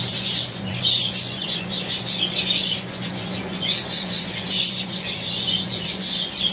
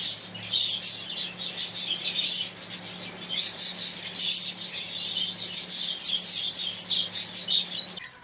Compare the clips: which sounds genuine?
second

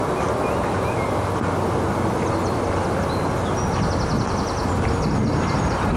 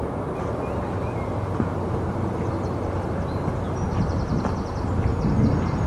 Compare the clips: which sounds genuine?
first